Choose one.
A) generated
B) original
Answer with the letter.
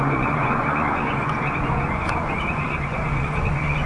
A